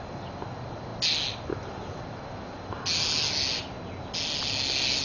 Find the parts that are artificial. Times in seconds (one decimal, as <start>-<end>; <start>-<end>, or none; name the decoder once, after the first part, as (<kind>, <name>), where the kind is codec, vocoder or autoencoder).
none